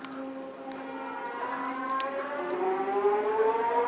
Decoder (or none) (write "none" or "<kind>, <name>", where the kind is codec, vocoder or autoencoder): none